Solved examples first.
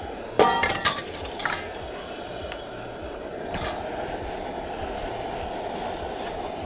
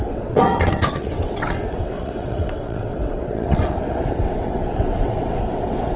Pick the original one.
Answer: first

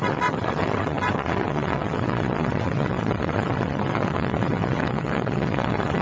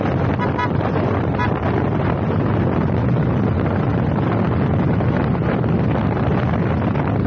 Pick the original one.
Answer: second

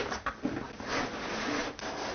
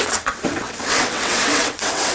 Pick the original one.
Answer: first